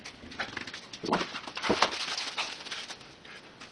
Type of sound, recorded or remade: recorded